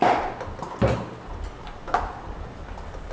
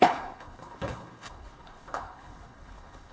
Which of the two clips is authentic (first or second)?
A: first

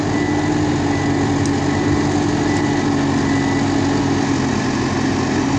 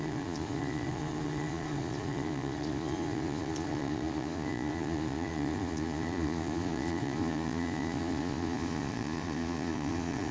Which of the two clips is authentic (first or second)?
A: first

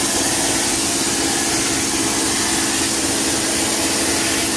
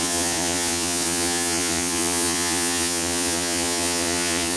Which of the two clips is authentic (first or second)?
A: first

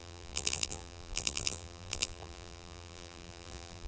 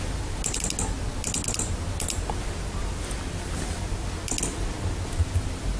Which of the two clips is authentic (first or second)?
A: second